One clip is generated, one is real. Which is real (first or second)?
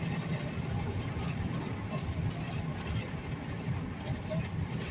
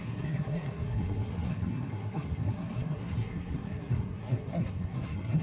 first